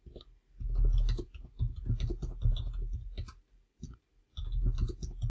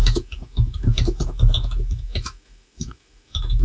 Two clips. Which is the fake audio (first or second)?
second